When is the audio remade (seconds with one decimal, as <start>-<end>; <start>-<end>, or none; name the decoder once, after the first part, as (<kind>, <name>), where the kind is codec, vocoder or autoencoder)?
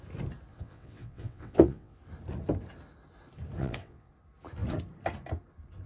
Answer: 0.5-2.0 (vocoder, WaveNeXt); 3.6-4.1